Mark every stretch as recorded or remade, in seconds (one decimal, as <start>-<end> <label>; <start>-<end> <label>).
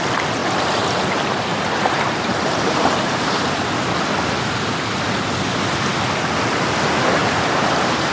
0.0-1.5 recorded; 1.5-3.7 remade; 3.7-7.2 recorded; 7.2-8.1 remade